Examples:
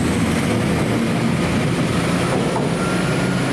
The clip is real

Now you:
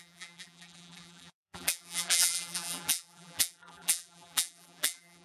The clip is fake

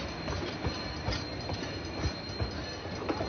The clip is real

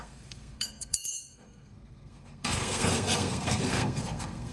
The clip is fake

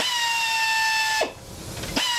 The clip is real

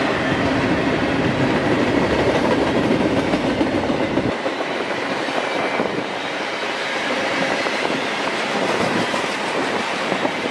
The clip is fake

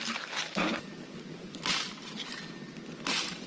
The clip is real